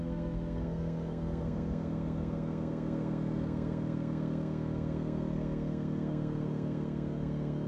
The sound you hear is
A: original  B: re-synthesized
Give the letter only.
B